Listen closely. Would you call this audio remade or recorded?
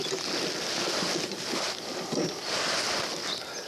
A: recorded